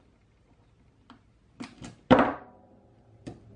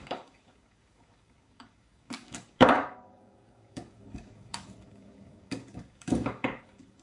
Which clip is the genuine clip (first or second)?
first